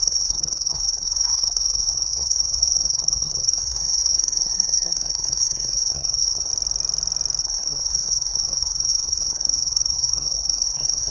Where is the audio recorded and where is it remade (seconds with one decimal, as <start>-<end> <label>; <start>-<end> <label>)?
0.0-6.5 remade; 6.5-7.4 recorded; 7.4-11.1 remade

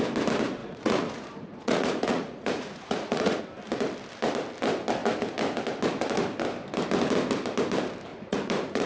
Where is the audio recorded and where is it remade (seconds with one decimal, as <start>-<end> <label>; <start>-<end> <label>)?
0.0-0.6 recorded; 0.6-3.4 remade; 3.4-8.1 recorded; 8.1-8.9 remade